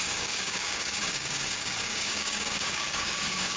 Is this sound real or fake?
fake